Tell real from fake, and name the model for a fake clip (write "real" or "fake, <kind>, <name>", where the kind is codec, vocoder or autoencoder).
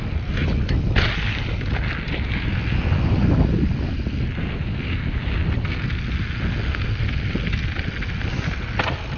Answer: real